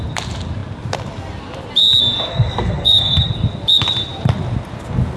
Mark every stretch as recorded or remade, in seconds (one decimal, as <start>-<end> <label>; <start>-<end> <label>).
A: 0.0-2.3 recorded; 2.3-3.3 remade; 3.3-5.2 recorded